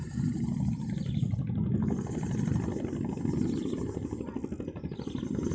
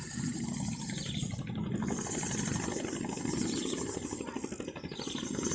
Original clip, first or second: first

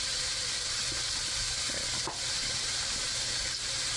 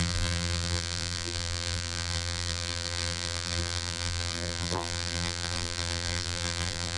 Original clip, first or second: first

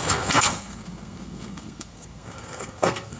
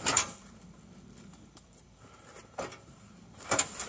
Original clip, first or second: second